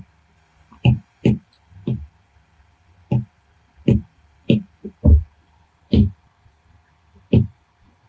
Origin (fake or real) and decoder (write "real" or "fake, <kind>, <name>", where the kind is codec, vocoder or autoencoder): fake, vocoder, BigVGAN v2